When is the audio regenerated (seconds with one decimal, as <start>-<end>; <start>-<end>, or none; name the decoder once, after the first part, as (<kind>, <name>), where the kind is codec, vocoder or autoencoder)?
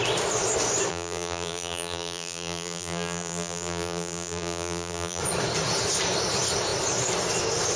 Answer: 0.9-5.2 (vocoder, BigVGAN v2)